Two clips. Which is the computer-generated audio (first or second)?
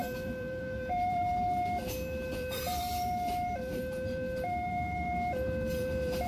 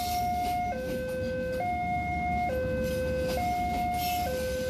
first